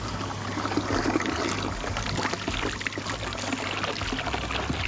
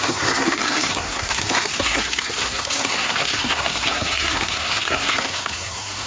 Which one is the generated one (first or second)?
second